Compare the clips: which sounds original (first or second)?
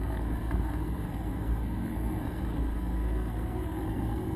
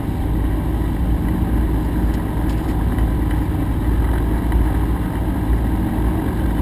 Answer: second